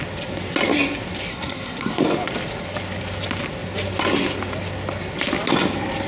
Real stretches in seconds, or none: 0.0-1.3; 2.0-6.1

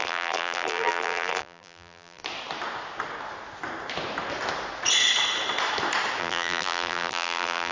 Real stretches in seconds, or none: 2.2-6.2

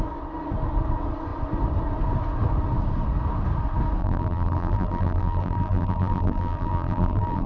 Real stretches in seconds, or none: 0.0-4.0

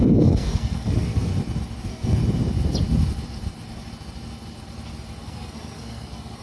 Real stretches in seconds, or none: 1.3-1.8; 2.2-5.2

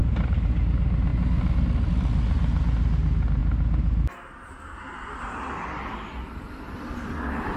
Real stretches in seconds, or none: 0.6-7.6

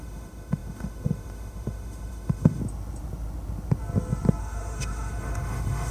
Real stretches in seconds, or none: 2.6-4.4

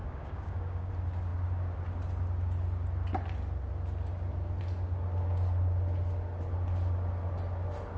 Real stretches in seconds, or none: 0.9-8.0